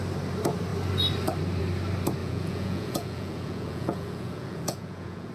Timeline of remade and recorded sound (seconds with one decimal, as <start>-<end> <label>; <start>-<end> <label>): 0.0-2.2 recorded; 2.2-5.3 remade